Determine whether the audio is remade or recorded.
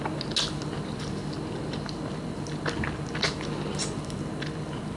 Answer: recorded